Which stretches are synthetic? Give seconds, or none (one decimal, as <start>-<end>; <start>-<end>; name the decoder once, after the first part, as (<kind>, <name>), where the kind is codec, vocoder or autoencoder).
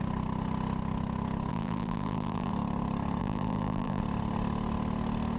1.5-2.5 (vocoder, BigVGAN v2); 3.2-4.0